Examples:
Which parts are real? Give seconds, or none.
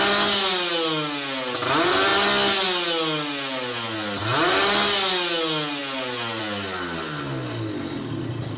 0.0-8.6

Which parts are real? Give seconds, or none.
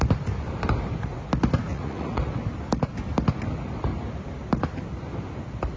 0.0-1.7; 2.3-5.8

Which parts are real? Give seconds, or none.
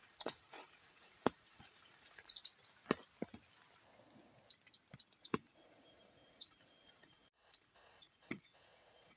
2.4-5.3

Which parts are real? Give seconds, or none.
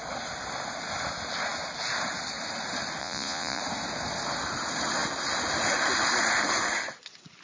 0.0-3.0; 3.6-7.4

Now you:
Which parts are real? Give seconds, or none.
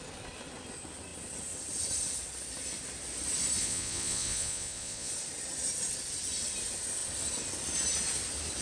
0.0-3.6; 5.1-8.6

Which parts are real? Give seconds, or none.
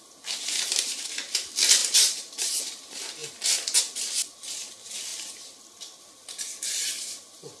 0.0-7.6